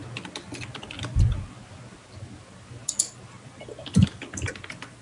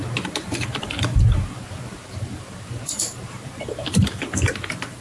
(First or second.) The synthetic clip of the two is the second